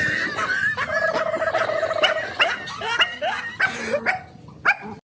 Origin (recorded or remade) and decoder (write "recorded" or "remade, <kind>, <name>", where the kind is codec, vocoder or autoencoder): recorded